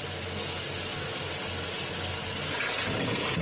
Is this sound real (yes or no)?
yes